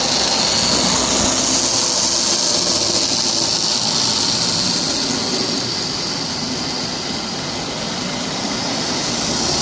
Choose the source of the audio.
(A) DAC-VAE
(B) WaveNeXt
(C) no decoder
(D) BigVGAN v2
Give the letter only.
C